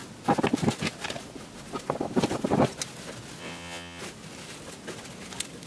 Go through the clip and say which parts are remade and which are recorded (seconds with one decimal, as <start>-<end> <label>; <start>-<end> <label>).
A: 0.0-3.4 recorded; 3.4-4.0 remade; 4.0-5.7 recorded